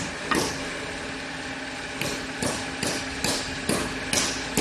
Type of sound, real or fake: real